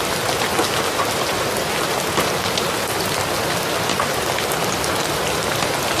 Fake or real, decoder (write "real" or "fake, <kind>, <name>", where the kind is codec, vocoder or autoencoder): real